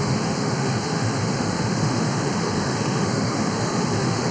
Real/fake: fake